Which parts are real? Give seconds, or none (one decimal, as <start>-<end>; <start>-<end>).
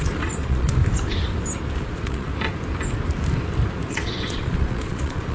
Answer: 0.8-1.8; 2.3-3.9